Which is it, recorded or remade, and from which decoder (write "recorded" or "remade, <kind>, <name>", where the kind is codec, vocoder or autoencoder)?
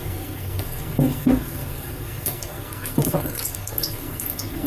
remade, codec, SNAC